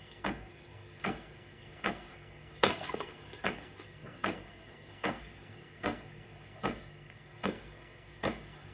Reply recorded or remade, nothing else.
remade